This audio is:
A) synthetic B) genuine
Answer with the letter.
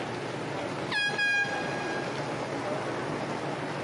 B